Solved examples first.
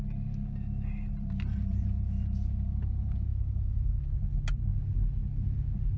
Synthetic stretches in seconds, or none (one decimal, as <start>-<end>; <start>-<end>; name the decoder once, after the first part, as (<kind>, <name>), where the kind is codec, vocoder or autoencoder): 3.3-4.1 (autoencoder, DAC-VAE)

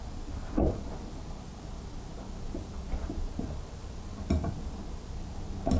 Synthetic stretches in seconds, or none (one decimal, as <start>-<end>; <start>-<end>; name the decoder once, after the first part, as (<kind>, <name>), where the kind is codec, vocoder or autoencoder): none

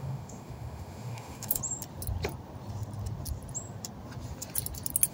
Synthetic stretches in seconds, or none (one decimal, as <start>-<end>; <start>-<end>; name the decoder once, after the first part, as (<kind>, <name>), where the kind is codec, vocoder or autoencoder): 0.0-1.6 (autoencoder, DAC-VAE)

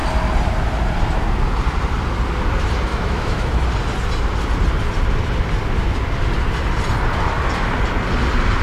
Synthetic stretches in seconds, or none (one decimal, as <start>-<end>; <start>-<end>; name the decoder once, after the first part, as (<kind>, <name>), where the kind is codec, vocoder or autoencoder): 2.9-3.5 (autoencoder, DAC-VAE)